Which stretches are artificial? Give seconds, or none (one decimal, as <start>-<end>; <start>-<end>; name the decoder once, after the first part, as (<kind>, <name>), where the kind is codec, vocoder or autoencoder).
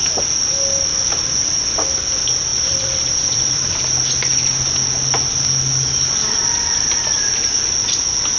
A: 2.5-3.7 (vocoder, BigVGAN v2)